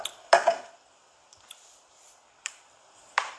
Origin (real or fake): fake